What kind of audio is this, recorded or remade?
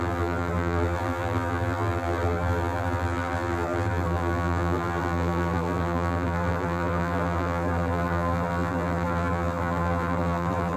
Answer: remade